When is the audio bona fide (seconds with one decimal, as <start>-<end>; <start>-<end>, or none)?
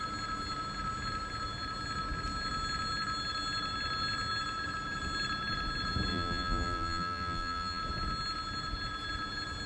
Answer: 0.0-6.1; 7.8-9.7